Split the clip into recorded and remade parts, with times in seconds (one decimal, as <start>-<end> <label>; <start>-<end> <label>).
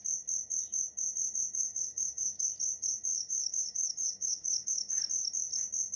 0.0-1.6 recorded; 1.6-2.5 remade; 2.5-3.1 recorded; 3.1-5.0 remade; 5.0-6.0 recorded